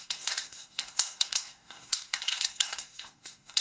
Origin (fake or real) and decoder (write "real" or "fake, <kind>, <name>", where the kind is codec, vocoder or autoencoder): fake, codec, SNAC